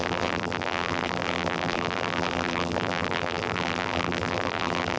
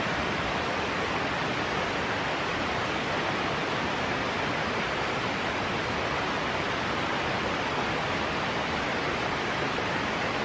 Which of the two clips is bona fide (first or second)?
second